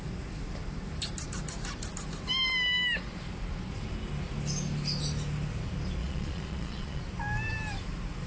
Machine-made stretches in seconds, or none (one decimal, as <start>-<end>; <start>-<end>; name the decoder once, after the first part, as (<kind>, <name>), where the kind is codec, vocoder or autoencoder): 6.0-7.0 (vocoder, Vocos)